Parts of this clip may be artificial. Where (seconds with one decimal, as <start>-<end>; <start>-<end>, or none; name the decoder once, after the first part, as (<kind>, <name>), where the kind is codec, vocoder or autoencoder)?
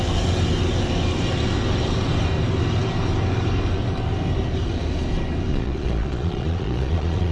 5.5-7.3 (vocoder, Vocos)